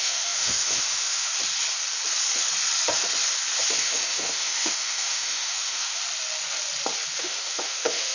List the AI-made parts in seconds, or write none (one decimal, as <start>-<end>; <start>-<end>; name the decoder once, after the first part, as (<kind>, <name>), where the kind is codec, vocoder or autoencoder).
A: 0.0-1.3 (autoencoder, DAC-VAE); 3.8-6.0; 7.2-8.1